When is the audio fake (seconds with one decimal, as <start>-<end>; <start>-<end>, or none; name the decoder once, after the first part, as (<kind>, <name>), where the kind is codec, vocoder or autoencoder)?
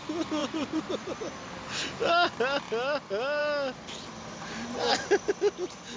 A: 0.4-1.2 (vocoder, BigVGAN v2)